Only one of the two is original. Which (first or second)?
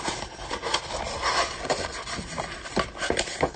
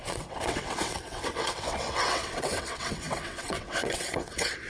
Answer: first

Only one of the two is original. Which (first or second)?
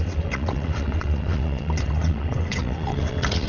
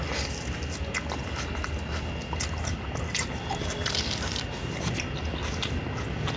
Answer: second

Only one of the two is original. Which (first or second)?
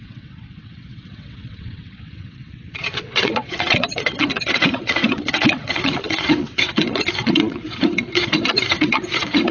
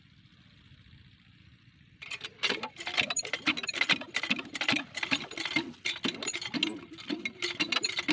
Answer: second